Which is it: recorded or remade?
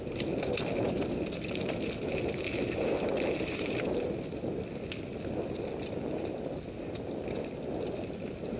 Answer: recorded